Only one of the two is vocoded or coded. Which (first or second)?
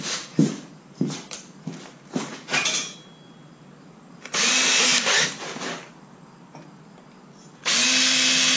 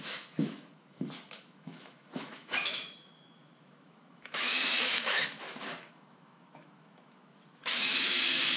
second